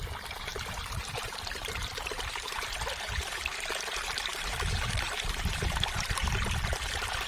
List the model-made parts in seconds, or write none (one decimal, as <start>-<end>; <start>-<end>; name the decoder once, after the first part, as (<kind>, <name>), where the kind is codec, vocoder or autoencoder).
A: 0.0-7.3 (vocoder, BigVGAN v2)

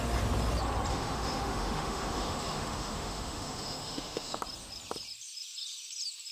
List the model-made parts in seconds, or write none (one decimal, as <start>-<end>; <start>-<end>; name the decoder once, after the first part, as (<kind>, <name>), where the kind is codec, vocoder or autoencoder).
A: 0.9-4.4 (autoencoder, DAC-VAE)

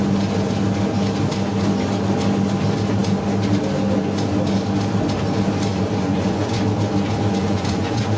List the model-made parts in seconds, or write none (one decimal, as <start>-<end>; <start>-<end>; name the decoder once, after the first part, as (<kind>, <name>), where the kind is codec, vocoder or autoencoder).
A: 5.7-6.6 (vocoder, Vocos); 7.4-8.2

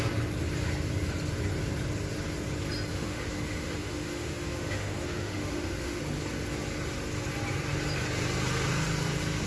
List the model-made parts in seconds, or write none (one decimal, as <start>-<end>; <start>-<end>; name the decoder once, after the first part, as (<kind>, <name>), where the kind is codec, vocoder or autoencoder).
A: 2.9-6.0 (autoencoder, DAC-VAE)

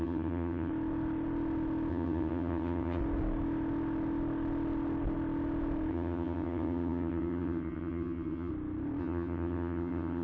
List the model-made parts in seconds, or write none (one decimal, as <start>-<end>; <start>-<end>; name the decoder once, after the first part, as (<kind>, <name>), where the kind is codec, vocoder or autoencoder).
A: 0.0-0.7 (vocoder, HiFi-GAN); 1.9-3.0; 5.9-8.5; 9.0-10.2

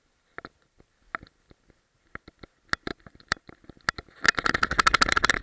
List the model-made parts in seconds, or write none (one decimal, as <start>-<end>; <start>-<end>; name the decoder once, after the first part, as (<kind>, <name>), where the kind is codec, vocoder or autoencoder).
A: 2.9-3.5 (vocoder, BigVGAN v2)